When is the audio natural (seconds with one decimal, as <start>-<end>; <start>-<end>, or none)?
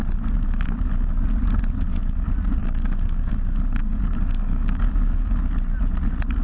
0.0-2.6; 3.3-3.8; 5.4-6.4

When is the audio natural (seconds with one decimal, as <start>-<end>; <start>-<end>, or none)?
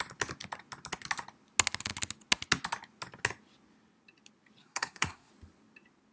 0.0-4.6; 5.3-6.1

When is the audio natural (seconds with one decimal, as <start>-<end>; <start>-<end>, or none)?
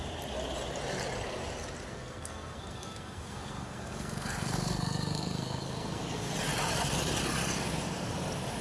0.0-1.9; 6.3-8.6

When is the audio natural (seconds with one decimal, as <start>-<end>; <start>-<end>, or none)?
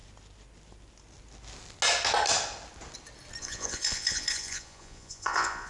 0.0-3.4